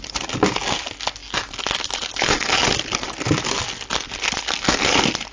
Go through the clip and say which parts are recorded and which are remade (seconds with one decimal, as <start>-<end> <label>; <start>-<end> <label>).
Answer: 0.0-5.3 recorded